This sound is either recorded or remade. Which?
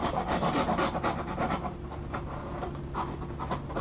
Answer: recorded